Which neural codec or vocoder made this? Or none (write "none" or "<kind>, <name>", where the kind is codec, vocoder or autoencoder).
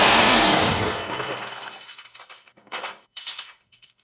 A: codec, SNAC